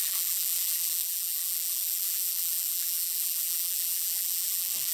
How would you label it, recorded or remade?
remade